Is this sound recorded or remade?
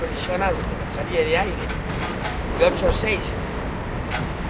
recorded